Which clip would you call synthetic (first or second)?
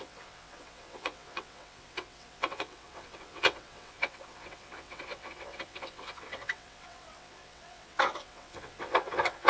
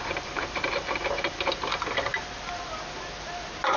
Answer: first